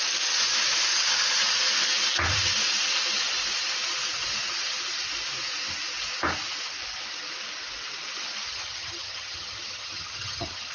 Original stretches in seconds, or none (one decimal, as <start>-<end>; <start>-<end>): 0.0-8.5